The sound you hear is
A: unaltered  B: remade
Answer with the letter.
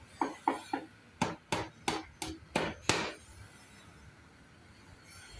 A